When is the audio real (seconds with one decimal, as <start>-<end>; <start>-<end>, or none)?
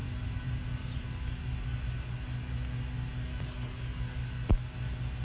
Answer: 0.0-3.3; 4.3-5.2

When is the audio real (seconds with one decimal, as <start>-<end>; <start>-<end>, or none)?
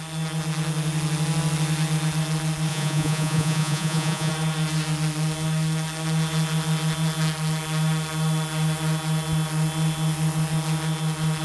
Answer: 0.0-2.7; 4.3-11.4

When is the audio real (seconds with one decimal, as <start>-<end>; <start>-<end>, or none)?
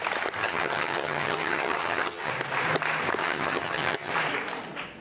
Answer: 0.0-0.4; 2.3-3.2; 4.1-5.0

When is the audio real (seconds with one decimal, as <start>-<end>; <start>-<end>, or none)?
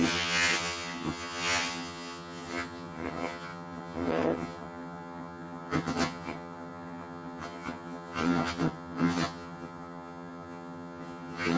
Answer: none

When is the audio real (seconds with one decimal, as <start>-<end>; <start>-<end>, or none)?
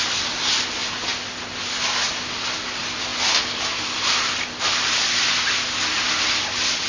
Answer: 0.0-6.9